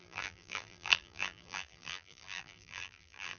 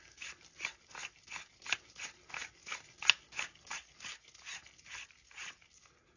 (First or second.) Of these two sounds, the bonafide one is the second